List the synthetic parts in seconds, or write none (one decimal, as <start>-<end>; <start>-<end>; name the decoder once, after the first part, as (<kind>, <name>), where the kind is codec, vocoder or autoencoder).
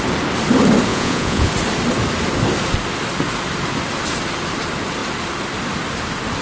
0.9-1.5 (vocoder, Vocos)